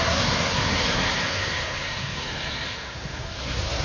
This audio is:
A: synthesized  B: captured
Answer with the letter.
A